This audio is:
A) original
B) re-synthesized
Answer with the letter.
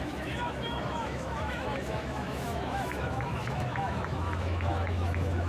B